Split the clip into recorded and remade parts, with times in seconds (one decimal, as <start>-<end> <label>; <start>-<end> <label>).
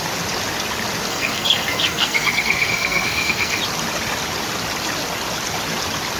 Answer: 0.0-1.1 recorded; 1.1-3.6 remade; 3.6-6.2 recorded